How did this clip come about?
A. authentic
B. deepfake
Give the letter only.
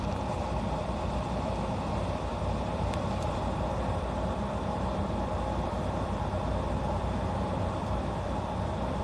B